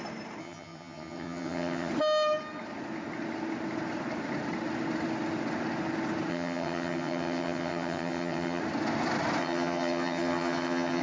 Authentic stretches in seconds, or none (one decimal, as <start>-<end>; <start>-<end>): 0.0-0.4; 1.9-6.3; 8.6-9.4